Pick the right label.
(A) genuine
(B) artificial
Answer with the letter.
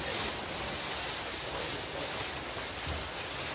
A